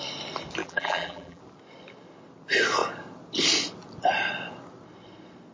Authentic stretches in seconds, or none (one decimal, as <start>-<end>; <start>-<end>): 0.0-0.6; 1.4-5.5